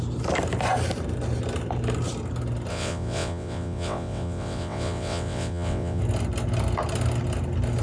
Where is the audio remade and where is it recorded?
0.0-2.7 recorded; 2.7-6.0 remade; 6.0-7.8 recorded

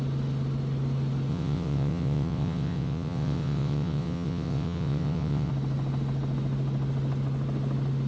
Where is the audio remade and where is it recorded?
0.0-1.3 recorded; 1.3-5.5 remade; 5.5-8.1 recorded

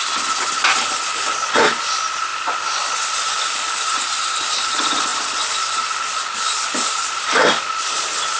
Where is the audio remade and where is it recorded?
0.0-8.4 recorded